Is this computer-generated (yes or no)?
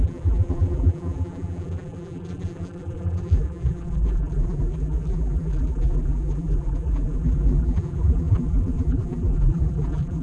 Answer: yes